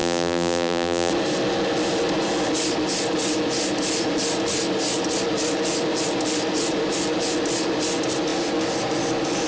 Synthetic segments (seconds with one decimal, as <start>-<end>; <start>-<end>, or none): 0.0-1.1